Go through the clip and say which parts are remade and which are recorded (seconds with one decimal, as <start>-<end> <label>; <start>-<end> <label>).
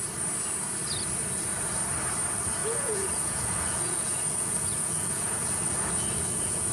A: 0.0-2.6 recorded; 2.6-6.7 remade